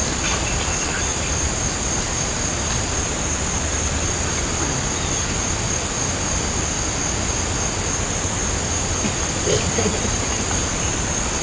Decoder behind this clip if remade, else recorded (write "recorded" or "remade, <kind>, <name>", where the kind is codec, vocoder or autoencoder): recorded